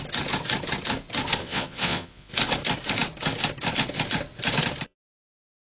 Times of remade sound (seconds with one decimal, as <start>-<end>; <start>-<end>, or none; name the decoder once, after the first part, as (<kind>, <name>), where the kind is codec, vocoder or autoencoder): 1.4-2.3 (vocoder, Vocos)